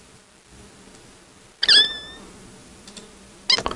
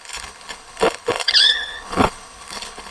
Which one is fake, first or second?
second